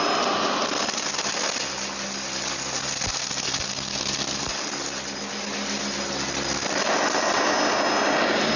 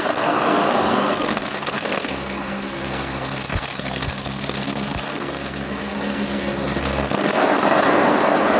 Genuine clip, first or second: first